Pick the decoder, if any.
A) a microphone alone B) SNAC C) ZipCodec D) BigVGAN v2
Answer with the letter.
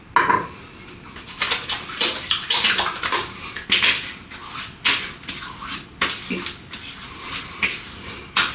A